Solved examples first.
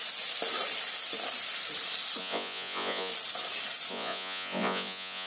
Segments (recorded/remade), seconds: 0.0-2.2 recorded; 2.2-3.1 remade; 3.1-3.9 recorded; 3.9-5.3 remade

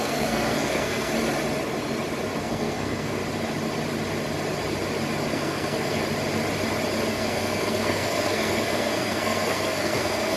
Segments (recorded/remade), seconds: 0.0-1.1 remade; 1.1-2.4 recorded; 2.4-3.2 remade; 3.2-5.3 recorded; 5.3-6.0 remade; 6.0-7.1 recorded; 7.1-10.4 remade

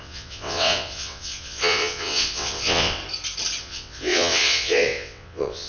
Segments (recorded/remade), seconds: 0.0-3.0 remade; 3.0-3.6 recorded; 3.6-5.7 remade

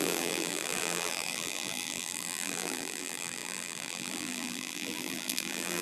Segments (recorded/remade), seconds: 0.0-5.8 remade